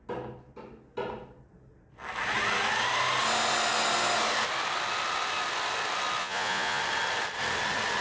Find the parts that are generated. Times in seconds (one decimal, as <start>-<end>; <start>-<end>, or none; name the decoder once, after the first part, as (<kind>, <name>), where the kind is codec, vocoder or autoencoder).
6.2-6.8 (vocoder, Vocos)